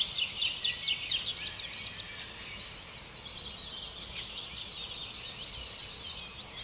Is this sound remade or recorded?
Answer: recorded